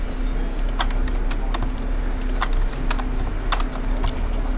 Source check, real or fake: real